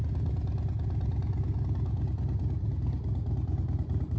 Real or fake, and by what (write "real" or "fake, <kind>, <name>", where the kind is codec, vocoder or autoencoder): real